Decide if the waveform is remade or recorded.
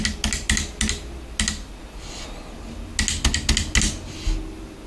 recorded